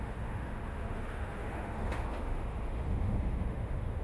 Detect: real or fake fake